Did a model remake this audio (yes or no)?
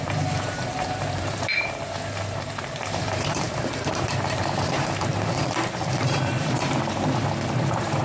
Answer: yes